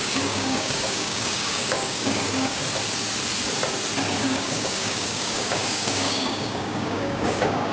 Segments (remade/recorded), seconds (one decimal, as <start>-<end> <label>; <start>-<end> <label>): 0.0-2.6 remade; 2.6-4.2 recorded; 4.2-7.7 remade